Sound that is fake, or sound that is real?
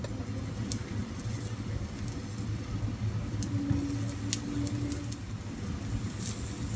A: real